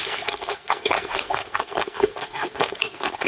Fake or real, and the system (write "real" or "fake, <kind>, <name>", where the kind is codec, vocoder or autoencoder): fake, codec, SNAC